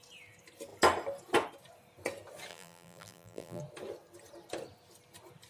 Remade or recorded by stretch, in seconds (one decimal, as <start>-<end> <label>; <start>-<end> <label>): 0.0-2.5 recorded; 2.5-3.6 remade; 3.6-5.5 recorded